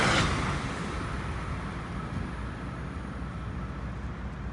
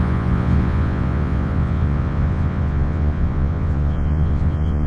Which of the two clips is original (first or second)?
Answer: first